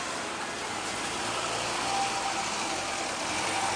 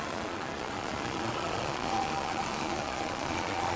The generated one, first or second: second